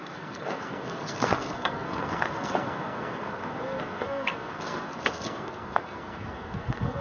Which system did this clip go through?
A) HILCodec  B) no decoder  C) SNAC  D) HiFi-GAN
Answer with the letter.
C